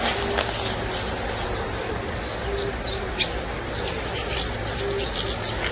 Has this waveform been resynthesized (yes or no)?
no